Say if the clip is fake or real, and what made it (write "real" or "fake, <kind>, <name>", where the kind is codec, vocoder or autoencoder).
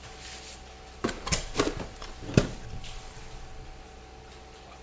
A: real